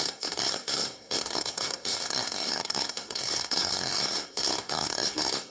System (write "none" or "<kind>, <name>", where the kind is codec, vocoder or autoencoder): codec, SNAC